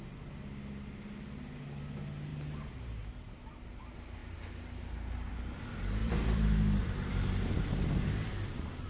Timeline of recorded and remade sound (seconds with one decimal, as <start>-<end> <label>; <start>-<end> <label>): 0.0-6.0 recorded; 6.0-7.6 remade; 7.6-8.9 recorded